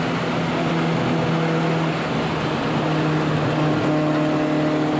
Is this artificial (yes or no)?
no